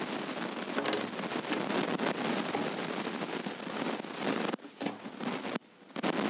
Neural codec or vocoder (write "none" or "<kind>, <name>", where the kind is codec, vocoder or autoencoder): none